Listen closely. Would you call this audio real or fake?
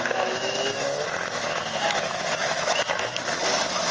fake